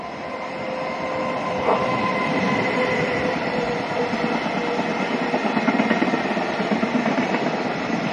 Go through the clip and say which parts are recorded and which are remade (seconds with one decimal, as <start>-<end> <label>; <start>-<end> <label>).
0.0-1.5 recorded; 1.5-4.0 remade; 4.0-8.1 recorded